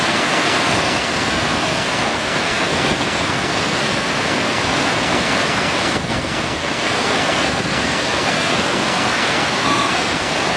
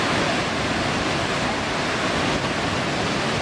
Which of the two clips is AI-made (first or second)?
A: first